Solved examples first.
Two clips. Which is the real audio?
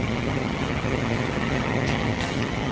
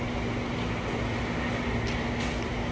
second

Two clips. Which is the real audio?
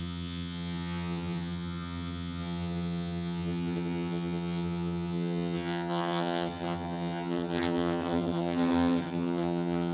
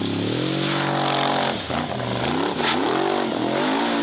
second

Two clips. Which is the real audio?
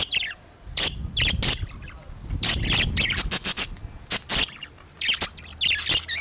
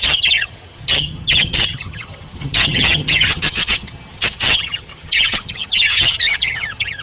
first